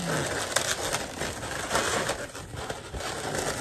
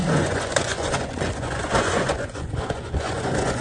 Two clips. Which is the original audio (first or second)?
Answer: first